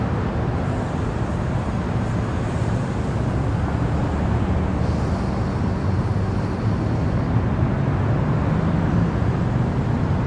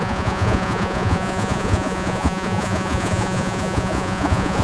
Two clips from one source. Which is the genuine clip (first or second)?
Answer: first